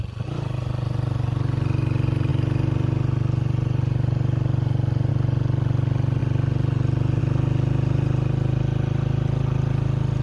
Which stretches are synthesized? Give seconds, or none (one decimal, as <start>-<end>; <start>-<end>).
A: none